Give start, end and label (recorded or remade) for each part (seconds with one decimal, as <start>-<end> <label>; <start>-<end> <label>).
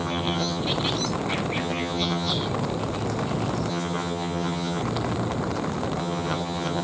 0.0-0.6 remade; 0.6-1.6 recorded; 1.6-2.3 remade; 2.3-3.7 recorded; 3.7-4.8 remade; 4.8-6.0 recorded; 6.0-6.8 remade